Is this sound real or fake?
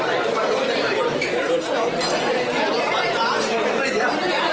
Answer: real